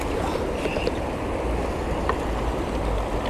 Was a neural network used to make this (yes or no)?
no